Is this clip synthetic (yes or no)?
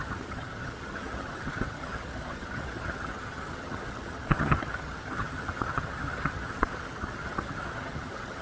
yes